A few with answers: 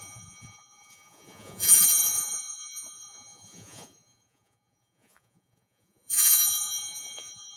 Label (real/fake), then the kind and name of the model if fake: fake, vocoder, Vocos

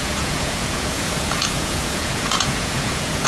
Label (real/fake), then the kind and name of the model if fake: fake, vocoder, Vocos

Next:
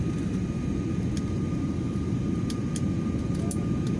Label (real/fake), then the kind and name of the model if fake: real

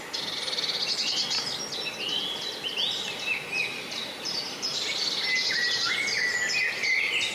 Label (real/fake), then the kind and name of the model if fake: real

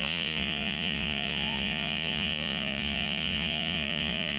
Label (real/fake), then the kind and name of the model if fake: fake, vocoder, Vocos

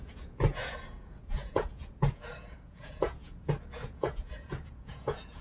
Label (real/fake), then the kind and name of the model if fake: fake, vocoder, Vocos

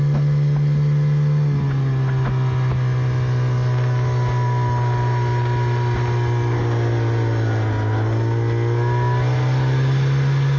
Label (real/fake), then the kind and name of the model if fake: real